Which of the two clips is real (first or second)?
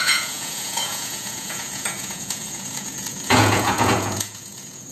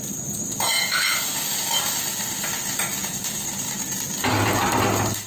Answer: second